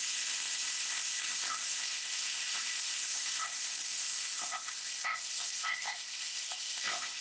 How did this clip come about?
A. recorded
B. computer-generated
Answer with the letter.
B